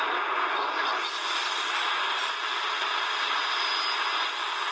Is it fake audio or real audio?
real